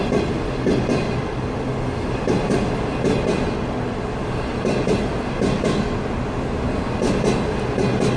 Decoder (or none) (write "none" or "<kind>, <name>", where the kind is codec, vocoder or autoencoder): none